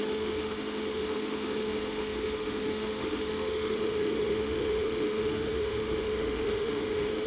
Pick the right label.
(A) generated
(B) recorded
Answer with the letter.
A